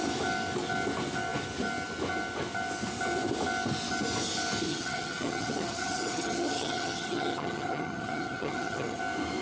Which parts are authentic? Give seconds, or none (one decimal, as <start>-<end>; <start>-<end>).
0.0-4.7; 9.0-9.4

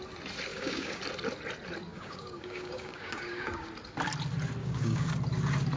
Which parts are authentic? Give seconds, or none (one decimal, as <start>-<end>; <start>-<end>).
0.0-0.5; 1.0-1.9; 3.7-4.6; 5.1-5.8

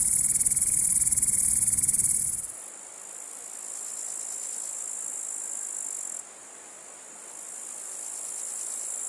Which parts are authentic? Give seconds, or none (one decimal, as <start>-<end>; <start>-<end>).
0.0-9.1